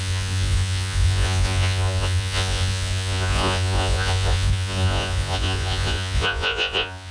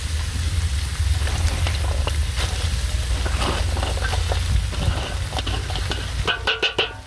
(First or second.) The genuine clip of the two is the second